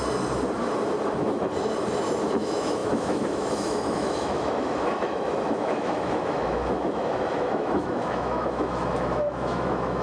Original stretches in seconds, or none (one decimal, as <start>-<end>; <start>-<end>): 0.0-2.2